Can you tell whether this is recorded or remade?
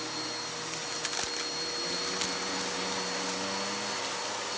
recorded